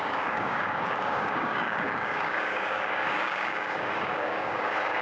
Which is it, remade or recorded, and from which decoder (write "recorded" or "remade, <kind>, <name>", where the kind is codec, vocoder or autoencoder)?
remade, codec, DAC